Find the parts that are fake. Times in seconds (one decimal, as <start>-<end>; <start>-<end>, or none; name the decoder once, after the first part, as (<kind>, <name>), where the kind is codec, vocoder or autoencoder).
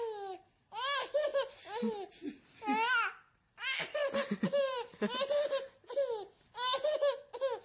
none